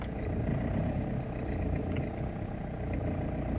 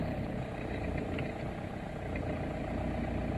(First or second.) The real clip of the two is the first